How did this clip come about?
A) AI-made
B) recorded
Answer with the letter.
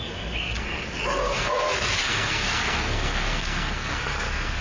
A